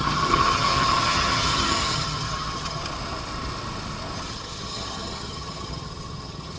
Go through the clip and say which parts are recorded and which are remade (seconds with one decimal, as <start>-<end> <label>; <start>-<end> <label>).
0.0-2.8 remade; 2.8-4.3 recorded; 4.3-6.6 remade